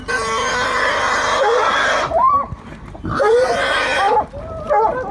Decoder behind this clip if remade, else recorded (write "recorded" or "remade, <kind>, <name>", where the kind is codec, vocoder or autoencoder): recorded